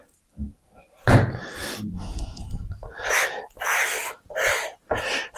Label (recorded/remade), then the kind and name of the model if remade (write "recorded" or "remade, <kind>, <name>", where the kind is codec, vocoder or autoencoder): recorded